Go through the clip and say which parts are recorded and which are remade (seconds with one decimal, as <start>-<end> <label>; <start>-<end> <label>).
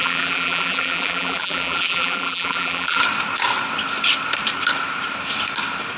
0.0-3.0 remade; 3.0-6.0 recorded